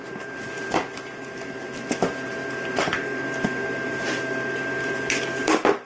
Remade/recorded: recorded